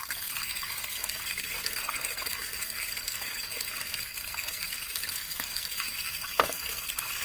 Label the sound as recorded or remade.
remade